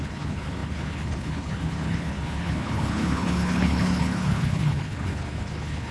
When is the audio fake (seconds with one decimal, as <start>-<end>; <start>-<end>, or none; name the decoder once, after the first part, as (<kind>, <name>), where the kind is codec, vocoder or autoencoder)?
0.0-5.9 (codec, HILCodec)